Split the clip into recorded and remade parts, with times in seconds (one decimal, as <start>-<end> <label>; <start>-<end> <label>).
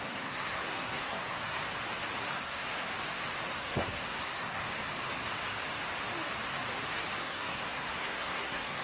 0.0-1.6 remade; 1.6-2.2 recorded; 2.2-2.9 remade; 2.9-3.6 recorded; 3.6-4.6 remade; 4.6-7.2 recorded; 7.2-8.8 remade